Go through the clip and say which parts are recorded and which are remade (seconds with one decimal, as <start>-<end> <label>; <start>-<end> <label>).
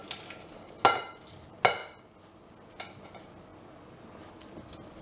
0.0-5.0 recorded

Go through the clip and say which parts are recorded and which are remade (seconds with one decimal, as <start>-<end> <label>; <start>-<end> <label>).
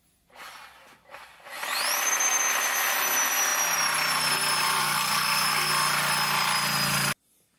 0.0-4.8 recorded; 4.8-5.7 remade; 5.7-7.6 recorded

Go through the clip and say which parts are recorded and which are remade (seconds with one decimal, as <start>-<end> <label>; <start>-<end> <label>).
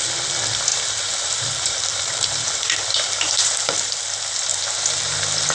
0.0-0.7 recorded; 0.7-4.0 remade; 4.0-4.5 recorded; 4.5-5.1 remade; 5.1-5.5 recorded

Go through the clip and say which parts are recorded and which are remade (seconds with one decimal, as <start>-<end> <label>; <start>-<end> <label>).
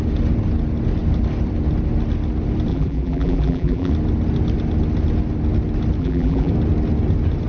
0.0-2.7 recorded; 2.7-3.9 remade; 3.9-6.0 recorded; 6.0-6.5 remade; 6.5-7.5 recorded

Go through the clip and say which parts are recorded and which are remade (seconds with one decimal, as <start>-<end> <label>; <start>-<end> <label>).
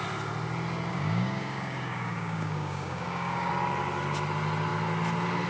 0.0-0.9 recorded; 0.9-3.5 remade; 3.5-5.5 recorded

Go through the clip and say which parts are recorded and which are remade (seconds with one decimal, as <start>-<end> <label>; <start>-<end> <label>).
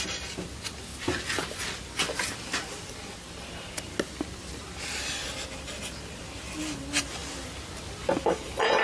0.0-8.8 recorded